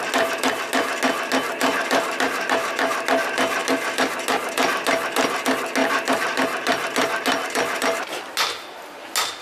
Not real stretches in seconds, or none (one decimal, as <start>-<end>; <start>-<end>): none